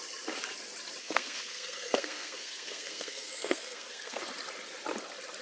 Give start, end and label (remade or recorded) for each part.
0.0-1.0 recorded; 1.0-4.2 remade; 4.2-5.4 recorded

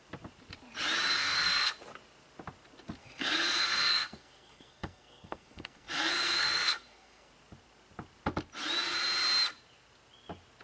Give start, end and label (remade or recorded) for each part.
0.0-1.2 recorded; 1.2-1.7 remade; 1.7-3.0 recorded; 3.0-7.3 remade; 7.3-10.6 recorded

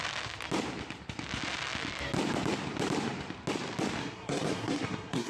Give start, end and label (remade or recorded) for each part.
0.0-4.0 recorded; 4.0-5.3 remade

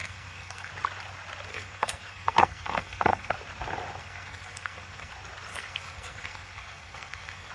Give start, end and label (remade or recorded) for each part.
0.0-0.7 remade; 0.7-1.5 recorded; 1.5-3.3 remade; 3.3-4.0 recorded; 4.0-5.1 remade; 5.1-5.5 recorded; 5.5-7.5 remade